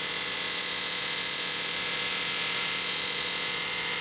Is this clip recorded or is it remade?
remade